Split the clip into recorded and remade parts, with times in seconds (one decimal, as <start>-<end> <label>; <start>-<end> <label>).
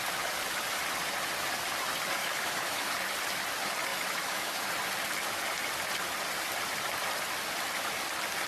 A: 0.0-2.2 recorded; 2.2-2.9 remade; 2.9-3.9 recorded; 3.9-4.7 remade; 4.7-8.5 recorded